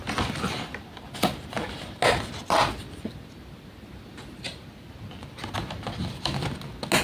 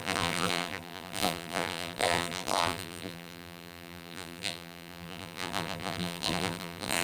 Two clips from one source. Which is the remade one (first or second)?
second